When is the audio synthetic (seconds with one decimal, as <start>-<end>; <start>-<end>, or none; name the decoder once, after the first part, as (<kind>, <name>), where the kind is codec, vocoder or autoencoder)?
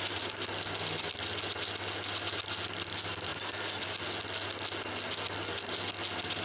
none